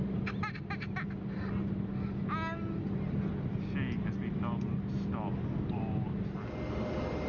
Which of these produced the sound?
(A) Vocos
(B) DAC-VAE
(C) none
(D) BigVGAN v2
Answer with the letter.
C